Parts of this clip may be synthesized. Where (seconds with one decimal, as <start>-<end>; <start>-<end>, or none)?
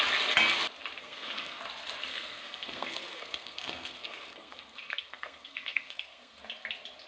1.0-1.6; 2.1-6.4